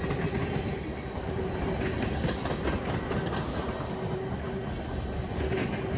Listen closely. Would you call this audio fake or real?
real